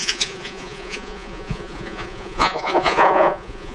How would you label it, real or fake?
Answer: fake